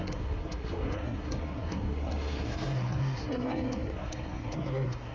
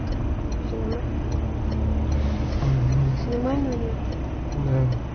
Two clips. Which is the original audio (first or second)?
second